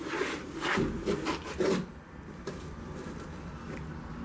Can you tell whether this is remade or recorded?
recorded